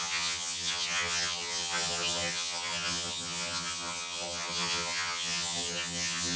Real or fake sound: fake